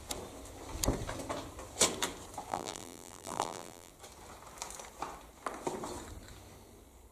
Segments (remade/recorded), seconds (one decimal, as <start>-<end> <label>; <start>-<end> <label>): 0.0-2.5 recorded; 2.5-3.9 remade; 3.9-7.1 recorded